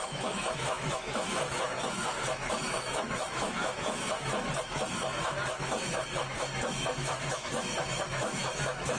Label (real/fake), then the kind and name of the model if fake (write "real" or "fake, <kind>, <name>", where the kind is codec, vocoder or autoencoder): fake, autoencoder, DAC-VAE